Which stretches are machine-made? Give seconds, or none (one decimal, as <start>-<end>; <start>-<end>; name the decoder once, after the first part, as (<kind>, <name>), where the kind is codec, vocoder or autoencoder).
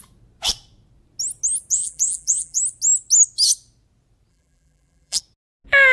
1.7-2.6 (vocoder, BigVGAN v2); 4.3-5.2